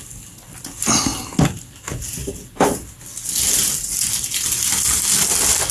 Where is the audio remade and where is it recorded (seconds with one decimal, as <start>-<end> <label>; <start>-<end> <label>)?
0.0-5.7 recorded